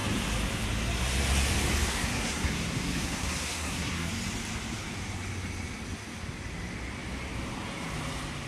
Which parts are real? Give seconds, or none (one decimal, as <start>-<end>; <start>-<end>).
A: 0.0-1.9; 4.1-8.5